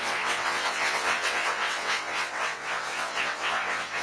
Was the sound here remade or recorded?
remade